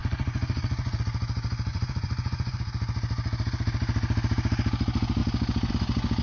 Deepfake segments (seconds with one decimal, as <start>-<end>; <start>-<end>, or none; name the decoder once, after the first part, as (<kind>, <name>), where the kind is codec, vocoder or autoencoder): 0.0-1.0 (vocoder, Vocos); 1.7-2.6